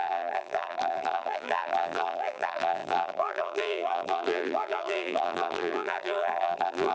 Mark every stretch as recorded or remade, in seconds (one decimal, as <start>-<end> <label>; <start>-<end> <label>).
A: 0.0-6.9 remade